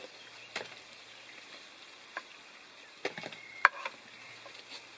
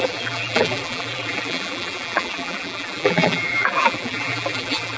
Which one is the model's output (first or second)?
second